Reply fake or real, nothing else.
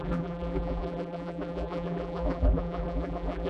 fake